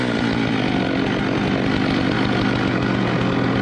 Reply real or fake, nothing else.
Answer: real